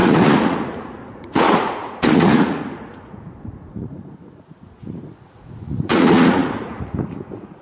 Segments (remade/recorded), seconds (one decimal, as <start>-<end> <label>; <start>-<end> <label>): 0.0-7.6 remade